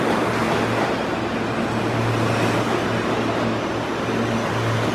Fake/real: real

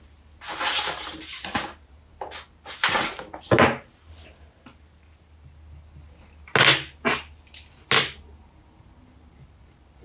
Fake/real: real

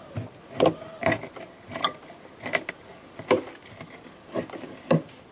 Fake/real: real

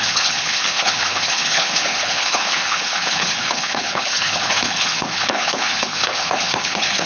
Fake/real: fake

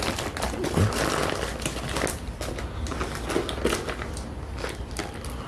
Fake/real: real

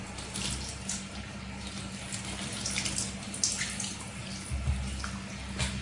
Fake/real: real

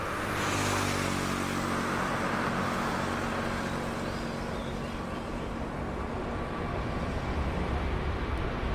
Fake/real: real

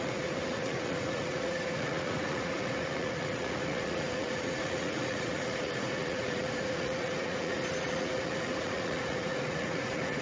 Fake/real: fake